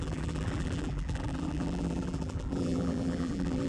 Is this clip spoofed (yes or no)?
yes